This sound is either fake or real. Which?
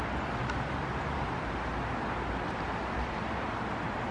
real